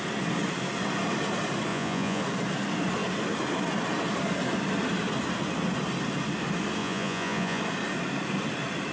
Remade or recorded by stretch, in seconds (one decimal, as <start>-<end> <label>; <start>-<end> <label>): 0.0-1.7 recorded; 1.7-2.2 remade; 2.2-6.8 recorded; 6.8-7.6 remade; 7.6-8.9 recorded